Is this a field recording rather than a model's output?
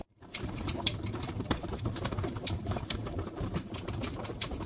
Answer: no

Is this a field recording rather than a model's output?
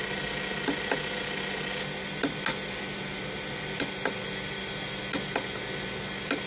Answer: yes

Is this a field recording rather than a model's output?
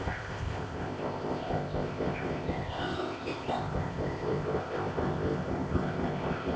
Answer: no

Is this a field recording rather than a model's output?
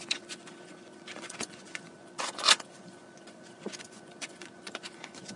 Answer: no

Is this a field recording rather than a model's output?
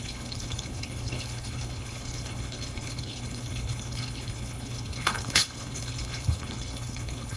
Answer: no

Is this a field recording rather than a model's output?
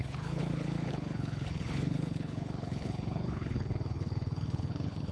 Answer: no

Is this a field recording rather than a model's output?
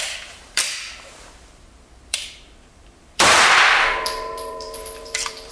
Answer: no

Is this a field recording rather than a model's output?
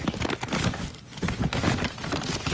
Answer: yes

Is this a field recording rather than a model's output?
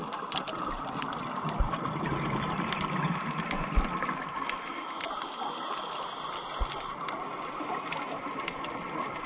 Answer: yes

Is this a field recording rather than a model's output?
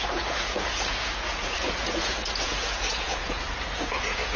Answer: no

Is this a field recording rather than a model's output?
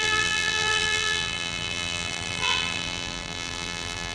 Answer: no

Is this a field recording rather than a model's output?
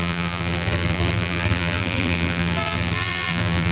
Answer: no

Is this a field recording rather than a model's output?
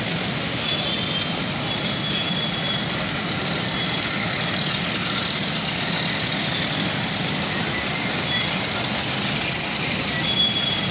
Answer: yes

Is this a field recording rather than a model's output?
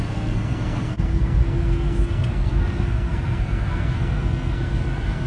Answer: no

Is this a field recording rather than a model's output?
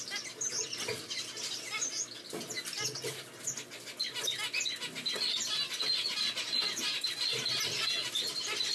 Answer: yes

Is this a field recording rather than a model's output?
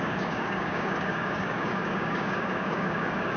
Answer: no